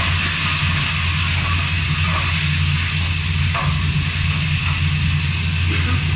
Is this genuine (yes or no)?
yes